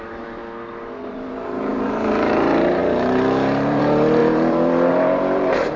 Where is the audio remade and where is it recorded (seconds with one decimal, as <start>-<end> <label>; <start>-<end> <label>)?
0.0-0.4 remade; 0.4-1.1 recorded; 1.1-5.8 remade